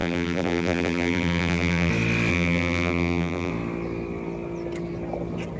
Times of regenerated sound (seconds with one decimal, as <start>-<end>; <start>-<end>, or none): 0.0-1.9; 2.3-3.5